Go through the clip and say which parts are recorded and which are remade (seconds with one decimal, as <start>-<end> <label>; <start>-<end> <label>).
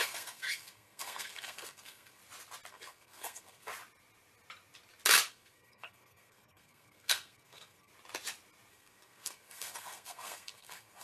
0.0-2.2 remade; 2.2-2.7 recorded; 2.7-3.7 remade; 3.7-5.3 recorded; 5.3-7.9 remade; 7.9-8.7 recorded; 8.7-11.0 remade